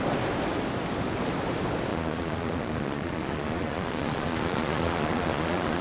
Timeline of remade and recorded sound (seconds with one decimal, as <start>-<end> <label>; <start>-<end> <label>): 0.0-1.9 recorded; 1.9-5.8 remade